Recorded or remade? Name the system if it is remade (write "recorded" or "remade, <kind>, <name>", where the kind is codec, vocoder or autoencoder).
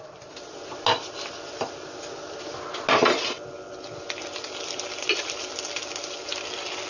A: recorded